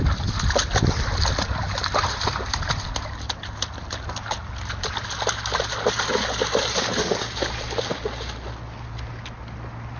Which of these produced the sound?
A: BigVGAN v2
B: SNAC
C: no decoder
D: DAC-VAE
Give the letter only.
C